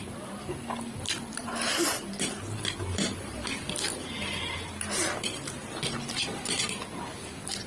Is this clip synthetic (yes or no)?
no